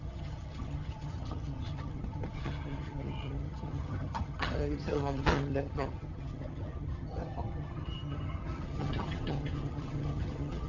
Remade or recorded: remade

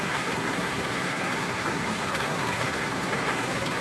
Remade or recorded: remade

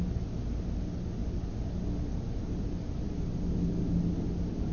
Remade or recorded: recorded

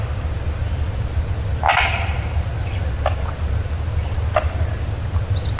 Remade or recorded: recorded